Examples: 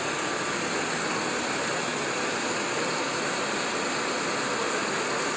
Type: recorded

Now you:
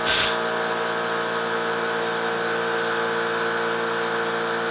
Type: recorded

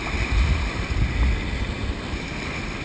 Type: recorded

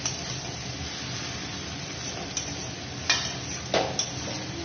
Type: recorded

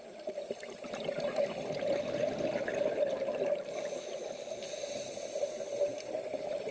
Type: recorded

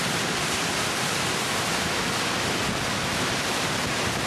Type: recorded